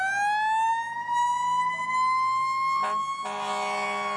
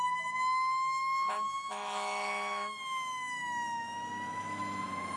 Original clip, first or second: first